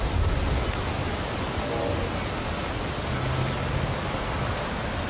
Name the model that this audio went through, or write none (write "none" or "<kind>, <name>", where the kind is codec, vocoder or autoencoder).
none